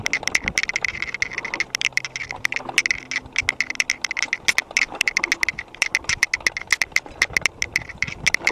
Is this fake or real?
real